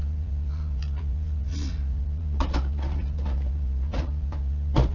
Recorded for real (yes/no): no